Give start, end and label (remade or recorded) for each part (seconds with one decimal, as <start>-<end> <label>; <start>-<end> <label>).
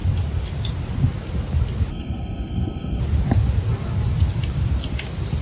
0.0-1.9 recorded; 1.9-3.0 remade; 3.0-5.4 recorded